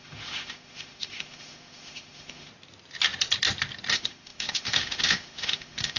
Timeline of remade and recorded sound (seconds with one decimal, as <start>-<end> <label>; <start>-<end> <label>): 0.0-2.5 remade; 2.5-3.9 recorded; 3.9-6.0 remade

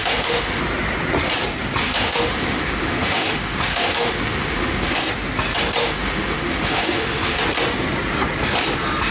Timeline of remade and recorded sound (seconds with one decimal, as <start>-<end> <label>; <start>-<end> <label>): 0.0-0.6 remade; 0.6-1.8 recorded; 1.8-5.1 remade; 5.1-5.8 recorded; 5.8-7.4 remade; 7.4-9.1 recorded